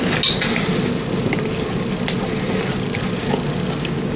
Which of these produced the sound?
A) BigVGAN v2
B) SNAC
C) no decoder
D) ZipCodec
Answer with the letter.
C